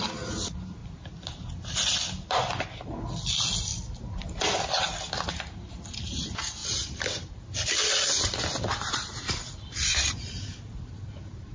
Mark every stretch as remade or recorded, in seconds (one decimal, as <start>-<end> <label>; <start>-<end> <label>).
0.0-11.5 recorded